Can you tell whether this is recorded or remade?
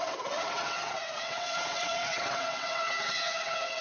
remade